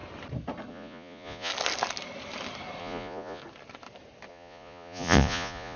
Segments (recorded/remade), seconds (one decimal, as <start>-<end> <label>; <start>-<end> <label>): 0.0-0.7 recorded; 0.7-1.5 remade; 1.5-2.8 recorded; 2.8-3.4 remade; 3.4-4.3 recorded; 4.3-5.8 remade